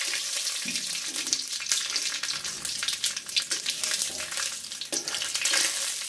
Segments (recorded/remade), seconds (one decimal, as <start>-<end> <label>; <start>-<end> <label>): 0.0-6.1 recorded